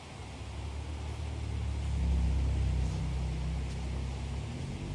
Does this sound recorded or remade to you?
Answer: recorded